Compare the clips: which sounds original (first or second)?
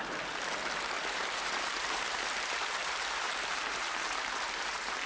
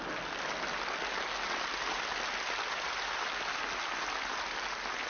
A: second